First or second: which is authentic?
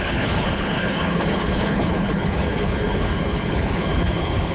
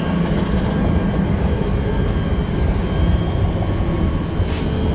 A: second